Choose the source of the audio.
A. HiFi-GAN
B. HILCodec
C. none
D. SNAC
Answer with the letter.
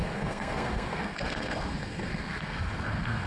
D